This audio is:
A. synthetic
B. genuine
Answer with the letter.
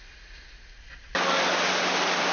B